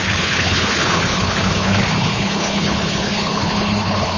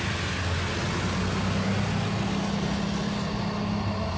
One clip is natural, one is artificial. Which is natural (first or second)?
second